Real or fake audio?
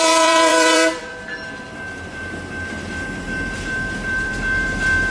fake